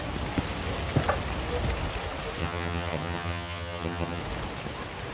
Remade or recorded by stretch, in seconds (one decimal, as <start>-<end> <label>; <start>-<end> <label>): 0.0-2.4 recorded; 2.4-4.2 remade; 4.2-5.1 recorded

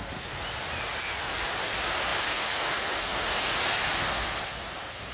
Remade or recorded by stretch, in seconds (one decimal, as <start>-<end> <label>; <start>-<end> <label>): 0.0-5.1 recorded